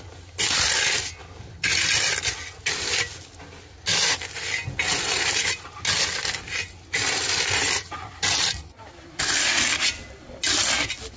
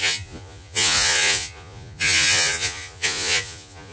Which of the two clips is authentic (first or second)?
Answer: first